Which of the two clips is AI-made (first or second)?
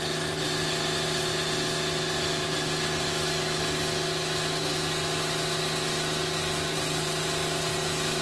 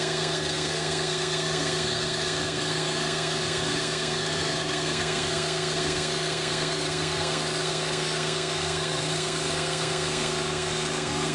second